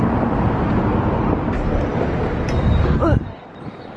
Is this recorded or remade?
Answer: recorded